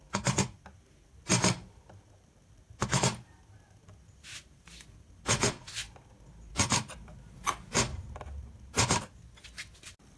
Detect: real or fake real